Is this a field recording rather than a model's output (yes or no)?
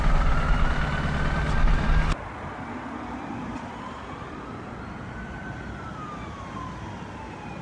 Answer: yes